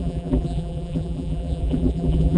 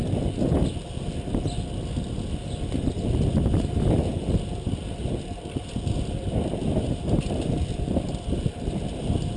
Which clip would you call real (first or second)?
second